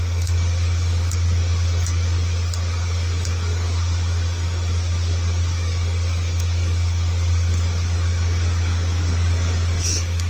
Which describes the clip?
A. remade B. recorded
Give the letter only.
A